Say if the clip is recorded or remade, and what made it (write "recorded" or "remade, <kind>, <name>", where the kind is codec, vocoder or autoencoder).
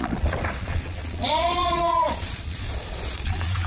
remade, vocoder, Vocos